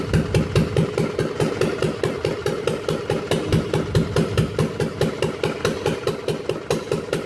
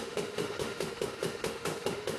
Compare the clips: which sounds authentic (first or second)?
first